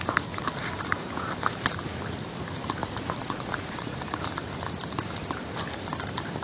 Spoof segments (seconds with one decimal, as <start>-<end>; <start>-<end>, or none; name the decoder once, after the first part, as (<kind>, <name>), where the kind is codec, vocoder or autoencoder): 2.8-4.0 (vocoder, Vocos)